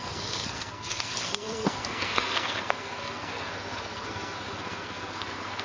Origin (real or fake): fake